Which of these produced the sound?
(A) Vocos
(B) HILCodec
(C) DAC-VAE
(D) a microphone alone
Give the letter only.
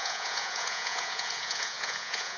A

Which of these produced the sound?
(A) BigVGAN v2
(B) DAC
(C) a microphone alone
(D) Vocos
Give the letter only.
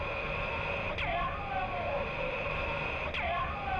C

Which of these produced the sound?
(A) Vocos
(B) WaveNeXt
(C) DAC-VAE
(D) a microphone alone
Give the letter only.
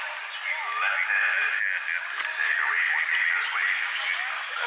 D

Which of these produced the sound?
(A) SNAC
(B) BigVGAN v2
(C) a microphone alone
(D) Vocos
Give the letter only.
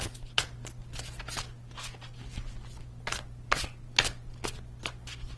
C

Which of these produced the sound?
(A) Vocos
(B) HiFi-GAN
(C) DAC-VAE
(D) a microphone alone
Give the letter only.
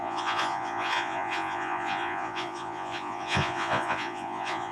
A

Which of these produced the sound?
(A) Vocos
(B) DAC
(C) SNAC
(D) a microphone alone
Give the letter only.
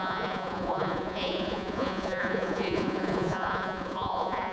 A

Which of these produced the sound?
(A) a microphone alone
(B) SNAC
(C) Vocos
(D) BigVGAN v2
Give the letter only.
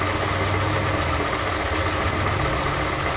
A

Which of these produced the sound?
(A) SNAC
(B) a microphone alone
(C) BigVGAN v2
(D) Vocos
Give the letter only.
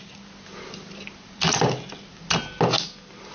B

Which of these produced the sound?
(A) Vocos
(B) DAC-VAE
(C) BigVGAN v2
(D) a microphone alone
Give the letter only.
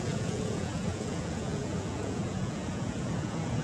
A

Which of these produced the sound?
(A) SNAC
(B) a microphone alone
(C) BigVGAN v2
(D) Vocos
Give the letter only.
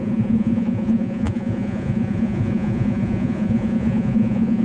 D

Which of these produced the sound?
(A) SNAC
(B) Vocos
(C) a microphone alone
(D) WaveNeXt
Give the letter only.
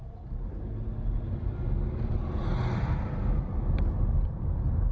C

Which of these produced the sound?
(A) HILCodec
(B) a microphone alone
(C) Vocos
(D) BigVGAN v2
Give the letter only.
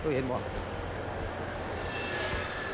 B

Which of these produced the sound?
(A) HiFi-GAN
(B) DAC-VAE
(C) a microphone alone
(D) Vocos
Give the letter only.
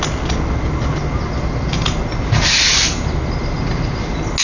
C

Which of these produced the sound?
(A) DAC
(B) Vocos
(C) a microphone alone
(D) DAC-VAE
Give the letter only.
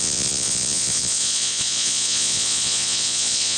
B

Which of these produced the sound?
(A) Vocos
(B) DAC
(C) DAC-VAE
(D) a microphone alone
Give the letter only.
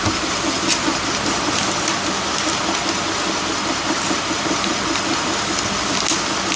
D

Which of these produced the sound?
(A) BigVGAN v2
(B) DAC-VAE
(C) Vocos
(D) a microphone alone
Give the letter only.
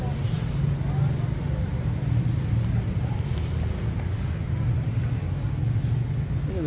D